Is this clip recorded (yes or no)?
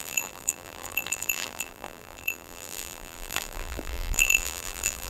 no